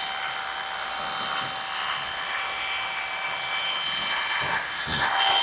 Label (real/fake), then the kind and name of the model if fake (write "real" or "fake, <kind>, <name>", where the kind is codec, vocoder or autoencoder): real